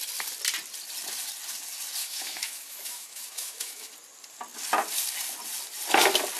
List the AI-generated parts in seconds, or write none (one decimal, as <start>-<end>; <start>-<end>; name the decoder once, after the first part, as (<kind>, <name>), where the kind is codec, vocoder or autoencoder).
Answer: 2.0-3.9 (autoencoder, DAC-VAE)